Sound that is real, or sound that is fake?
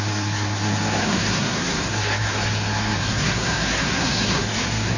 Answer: fake